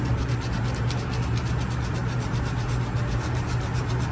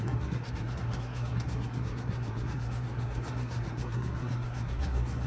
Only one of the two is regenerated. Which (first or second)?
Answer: second